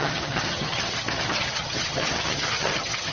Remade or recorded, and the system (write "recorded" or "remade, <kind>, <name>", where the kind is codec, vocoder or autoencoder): remade, vocoder, HiFi-GAN